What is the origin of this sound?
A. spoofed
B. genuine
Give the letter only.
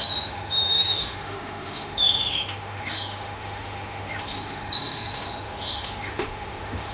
A